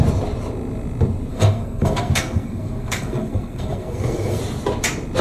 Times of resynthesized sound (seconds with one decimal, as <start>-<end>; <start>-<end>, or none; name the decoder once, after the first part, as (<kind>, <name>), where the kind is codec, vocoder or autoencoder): 1.3-4.4 (codec, SNAC)